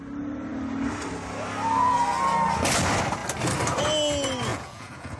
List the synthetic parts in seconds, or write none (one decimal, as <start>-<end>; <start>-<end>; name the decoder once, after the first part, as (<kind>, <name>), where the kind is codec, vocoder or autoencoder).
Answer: 4.5-5.2 (vocoder, Vocos)